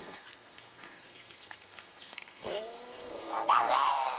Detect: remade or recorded remade